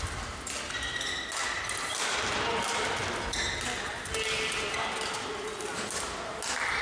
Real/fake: real